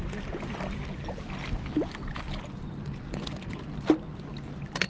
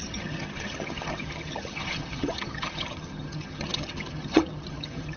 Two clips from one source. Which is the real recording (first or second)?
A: first